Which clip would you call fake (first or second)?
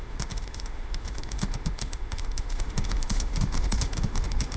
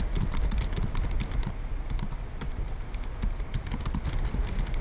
first